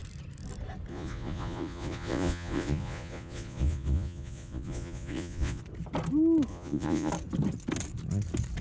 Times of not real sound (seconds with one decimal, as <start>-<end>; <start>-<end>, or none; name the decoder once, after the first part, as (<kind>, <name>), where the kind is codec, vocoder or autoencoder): 0.9-5.6 (vocoder, Vocos); 6.5-7.1